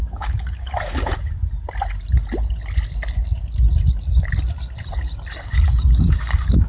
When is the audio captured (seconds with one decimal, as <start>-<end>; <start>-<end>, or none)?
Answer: 1.4-5.4